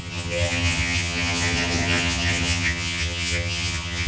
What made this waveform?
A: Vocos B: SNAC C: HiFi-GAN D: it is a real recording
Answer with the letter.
C